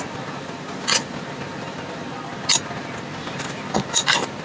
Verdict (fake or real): real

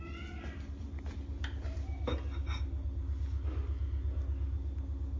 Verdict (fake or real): real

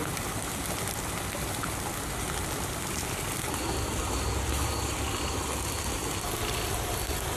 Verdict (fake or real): real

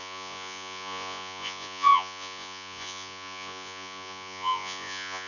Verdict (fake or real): fake